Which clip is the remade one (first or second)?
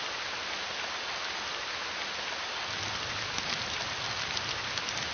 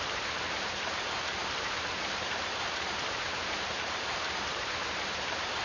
second